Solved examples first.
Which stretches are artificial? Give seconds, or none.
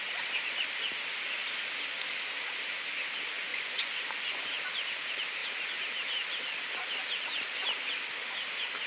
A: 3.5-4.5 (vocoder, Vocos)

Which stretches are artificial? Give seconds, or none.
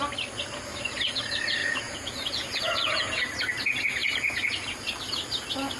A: 1.6-3.2 (vocoder, Vocos)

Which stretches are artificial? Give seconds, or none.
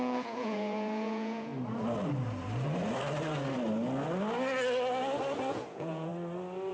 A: 0.0-1.5 (vocoder, Vocos); 5.5-6.1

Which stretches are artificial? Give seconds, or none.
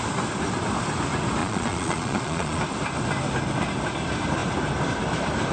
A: 1.4-2.6 (vocoder, Vocos)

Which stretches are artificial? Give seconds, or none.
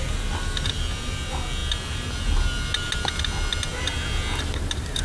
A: none